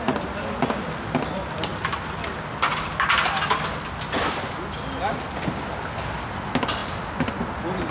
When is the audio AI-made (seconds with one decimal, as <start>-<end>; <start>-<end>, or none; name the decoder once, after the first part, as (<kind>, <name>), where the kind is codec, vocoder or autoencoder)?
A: none